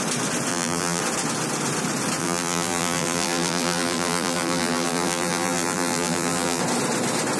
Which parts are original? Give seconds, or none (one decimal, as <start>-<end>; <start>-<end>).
0.0-0.5; 1.0-2.2; 6.6-7.4